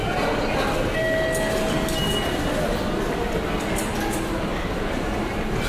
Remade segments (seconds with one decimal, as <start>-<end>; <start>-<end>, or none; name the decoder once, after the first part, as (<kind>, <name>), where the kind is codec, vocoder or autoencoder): none